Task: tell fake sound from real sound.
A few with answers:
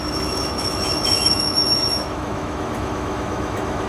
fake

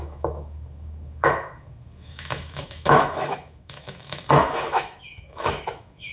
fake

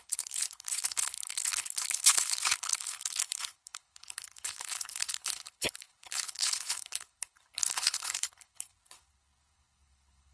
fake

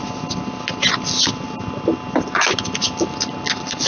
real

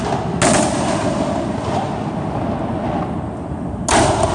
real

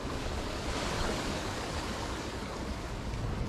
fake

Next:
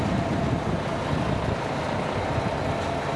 real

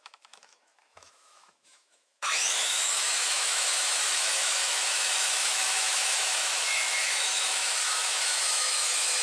fake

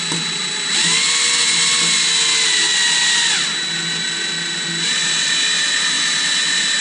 real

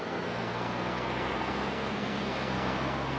fake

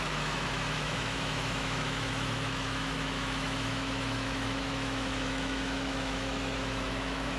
fake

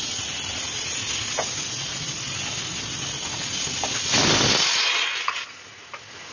real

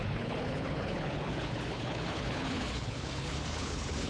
fake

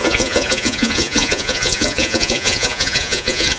fake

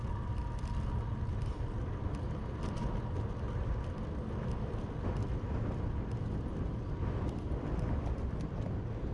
real